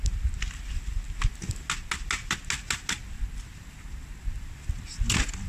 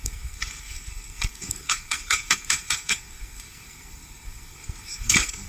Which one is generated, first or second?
second